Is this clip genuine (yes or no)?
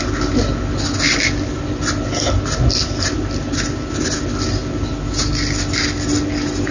yes